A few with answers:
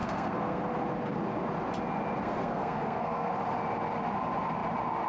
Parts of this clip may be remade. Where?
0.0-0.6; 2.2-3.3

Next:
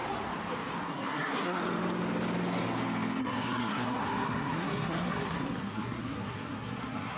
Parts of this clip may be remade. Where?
0.8-1.6; 3.2-7.2

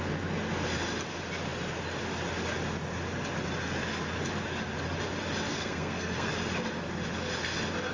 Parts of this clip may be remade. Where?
5.5-6.3

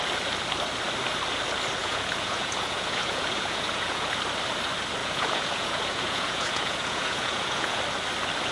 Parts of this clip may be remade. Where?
1.8-4.1; 5.0-7.8

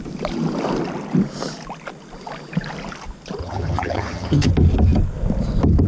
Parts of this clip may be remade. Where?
3.4-4.5

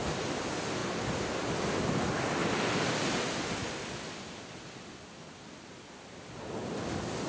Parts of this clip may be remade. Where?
none

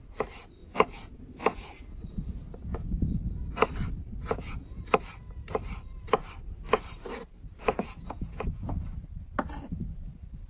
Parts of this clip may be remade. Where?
0.6-2.2; 4.2-4.8; 7.6-8.7

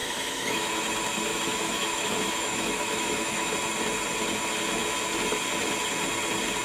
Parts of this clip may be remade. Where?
0.0-0.7; 1.3-3.5